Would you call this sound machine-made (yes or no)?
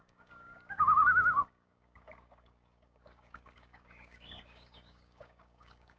yes